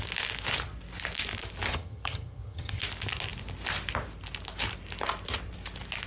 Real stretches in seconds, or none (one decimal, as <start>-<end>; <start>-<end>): 0.0-1.7; 2.8-6.1